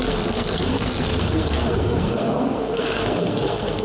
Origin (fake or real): fake